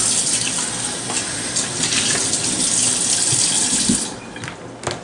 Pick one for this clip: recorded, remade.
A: recorded